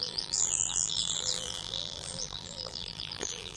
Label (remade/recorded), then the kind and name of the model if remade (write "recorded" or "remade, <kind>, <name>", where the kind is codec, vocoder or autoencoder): remade, vocoder, BigVGAN v2